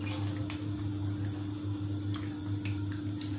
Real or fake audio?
real